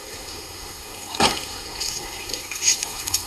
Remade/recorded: remade